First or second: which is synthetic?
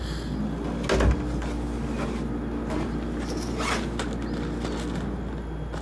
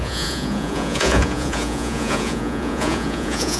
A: second